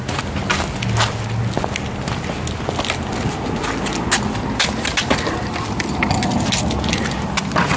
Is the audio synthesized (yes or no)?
no